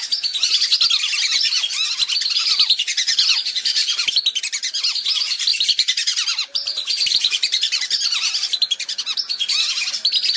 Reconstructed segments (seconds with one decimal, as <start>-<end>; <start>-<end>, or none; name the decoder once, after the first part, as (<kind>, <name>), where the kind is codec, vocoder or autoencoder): 3.8-4.4 (vocoder, BigVGAN v2); 5.5-9.0